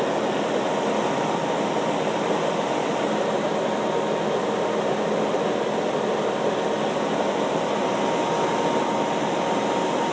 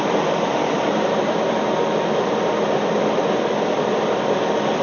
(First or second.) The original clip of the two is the first